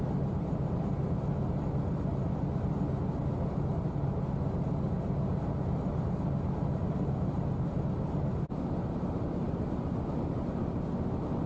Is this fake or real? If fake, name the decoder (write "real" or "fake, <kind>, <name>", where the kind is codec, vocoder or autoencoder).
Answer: real